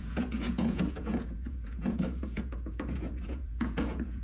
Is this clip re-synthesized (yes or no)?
yes